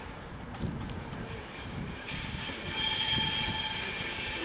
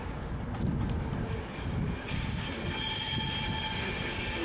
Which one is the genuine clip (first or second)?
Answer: second